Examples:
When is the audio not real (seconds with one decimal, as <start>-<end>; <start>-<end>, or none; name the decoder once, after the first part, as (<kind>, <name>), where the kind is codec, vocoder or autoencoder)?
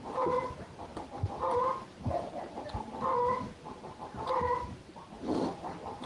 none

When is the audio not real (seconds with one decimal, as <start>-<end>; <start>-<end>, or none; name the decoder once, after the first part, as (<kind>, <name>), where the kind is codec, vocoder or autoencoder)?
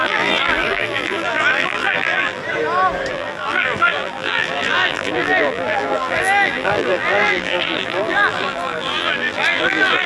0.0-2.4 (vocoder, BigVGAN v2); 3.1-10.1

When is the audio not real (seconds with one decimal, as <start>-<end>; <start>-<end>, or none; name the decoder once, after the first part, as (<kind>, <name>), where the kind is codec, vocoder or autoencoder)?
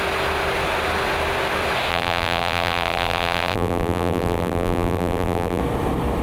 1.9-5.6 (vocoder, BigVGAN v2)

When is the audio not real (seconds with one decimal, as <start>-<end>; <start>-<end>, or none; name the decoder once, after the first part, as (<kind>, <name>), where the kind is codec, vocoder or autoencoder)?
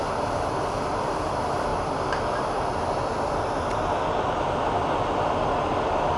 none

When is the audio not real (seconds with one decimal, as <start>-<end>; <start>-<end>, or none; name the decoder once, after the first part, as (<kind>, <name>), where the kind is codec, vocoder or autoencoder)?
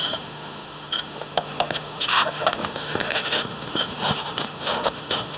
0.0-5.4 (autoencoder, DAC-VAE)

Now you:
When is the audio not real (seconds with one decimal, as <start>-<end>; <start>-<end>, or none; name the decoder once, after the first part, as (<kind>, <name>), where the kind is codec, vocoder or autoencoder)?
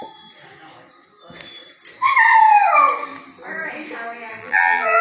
4.4-5.0 (vocoder, BigVGAN v2)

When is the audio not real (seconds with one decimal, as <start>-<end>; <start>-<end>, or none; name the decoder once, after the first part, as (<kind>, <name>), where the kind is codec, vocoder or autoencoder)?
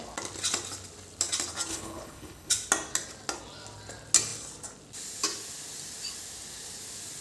1.7-2.5 (codec, HILCodec)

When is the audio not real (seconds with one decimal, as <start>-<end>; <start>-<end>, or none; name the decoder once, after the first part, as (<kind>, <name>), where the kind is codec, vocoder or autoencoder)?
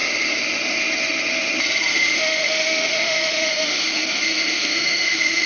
1.9-5.5 (autoencoder, DAC-VAE)